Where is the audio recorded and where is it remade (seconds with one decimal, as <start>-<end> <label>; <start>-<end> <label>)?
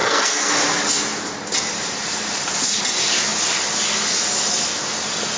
0.0-0.5 remade; 0.5-5.4 recorded